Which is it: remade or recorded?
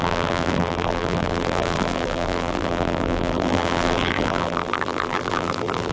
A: remade